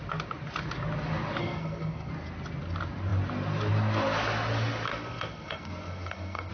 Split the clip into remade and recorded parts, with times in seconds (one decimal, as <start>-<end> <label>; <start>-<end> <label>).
0.0-1.4 recorded; 1.4-2.1 remade; 2.1-4.9 recorded; 4.9-6.5 remade